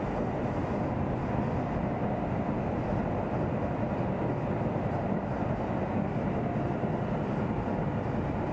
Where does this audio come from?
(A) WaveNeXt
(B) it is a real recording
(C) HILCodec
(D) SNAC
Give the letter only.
B